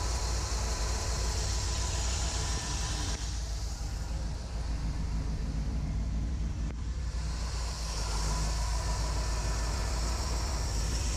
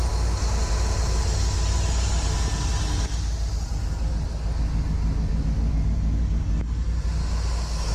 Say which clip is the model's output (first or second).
first